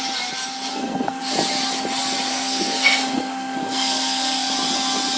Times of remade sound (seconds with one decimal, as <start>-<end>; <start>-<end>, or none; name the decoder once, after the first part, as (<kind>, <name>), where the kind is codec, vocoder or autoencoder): 0.7-1.2 (codec, SNAC); 2.3-4.5